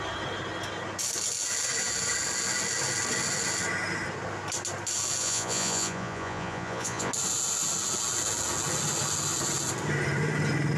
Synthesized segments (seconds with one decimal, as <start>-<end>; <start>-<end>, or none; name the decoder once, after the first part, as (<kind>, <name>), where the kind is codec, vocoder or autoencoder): 5.2-7.1 (vocoder, Vocos)